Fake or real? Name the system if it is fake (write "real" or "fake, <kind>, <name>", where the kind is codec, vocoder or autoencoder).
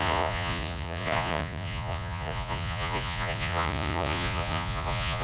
fake, vocoder, Vocos